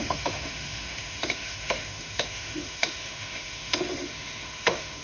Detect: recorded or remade remade